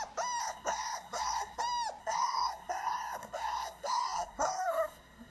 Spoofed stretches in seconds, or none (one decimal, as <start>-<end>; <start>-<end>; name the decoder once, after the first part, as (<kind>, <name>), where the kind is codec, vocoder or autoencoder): 0.4-1.6 (codec, SNAC); 2.0-5.3